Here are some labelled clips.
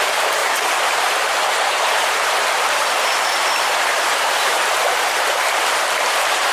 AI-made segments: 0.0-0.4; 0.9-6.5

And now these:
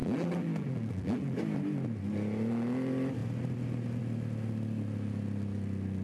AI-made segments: 0.0-1.4

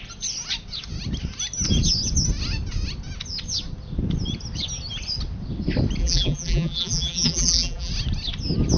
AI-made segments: 6.0-7.9

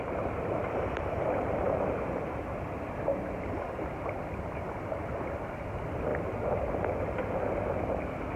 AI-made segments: 0.0-6.1; 7.4-8.4